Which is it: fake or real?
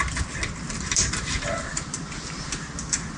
real